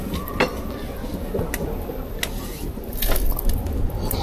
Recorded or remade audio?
recorded